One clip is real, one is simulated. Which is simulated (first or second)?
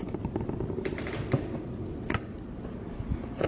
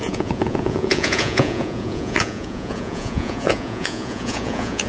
second